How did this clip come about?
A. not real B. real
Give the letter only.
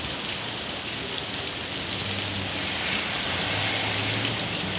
B